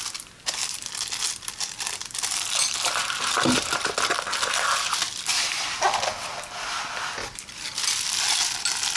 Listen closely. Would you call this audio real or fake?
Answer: real